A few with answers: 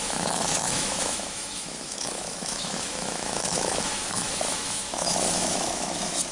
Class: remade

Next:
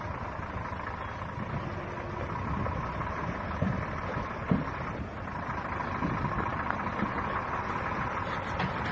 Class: recorded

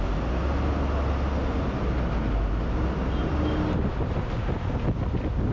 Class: recorded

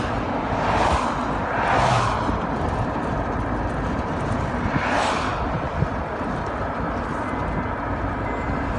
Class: recorded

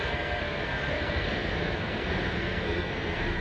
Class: remade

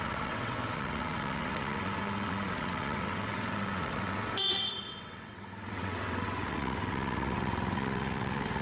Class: remade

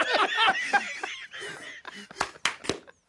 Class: recorded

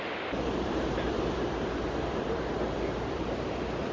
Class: remade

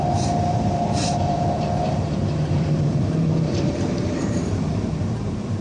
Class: remade